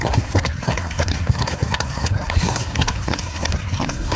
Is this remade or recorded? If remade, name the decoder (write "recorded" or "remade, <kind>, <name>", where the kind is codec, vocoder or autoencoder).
remade, codec, SNAC